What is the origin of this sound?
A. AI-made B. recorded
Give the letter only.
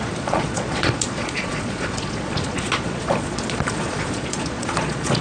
A